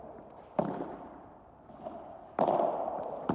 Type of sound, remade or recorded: recorded